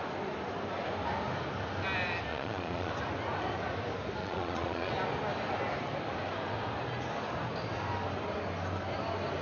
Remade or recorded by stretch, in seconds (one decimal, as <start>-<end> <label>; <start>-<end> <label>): 0.0-2.3 recorded; 2.3-2.9 remade; 2.9-4.2 recorded; 4.2-4.9 remade; 4.9-9.4 recorded